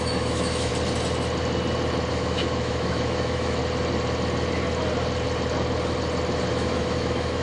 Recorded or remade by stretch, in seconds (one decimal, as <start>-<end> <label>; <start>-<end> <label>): 0.0-0.7 remade; 0.7-2.1 recorded; 2.1-3.6 remade; 3.6-6.5 recorded; 6.5-7.4 remade